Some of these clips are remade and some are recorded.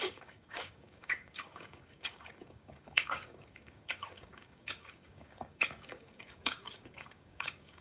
remade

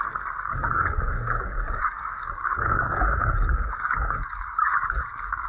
remade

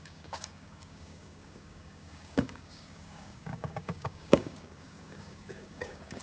remade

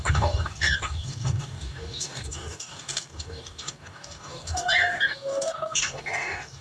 remade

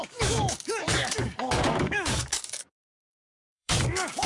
remade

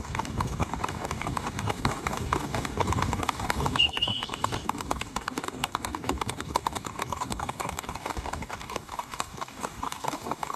remade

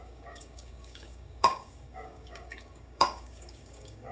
remade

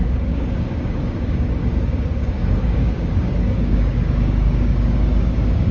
remade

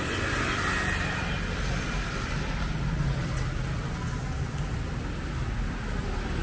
recorded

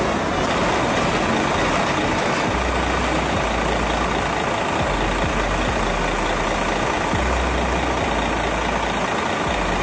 recorded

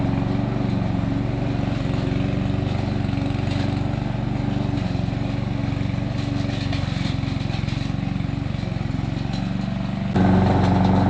recorded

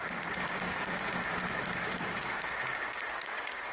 remade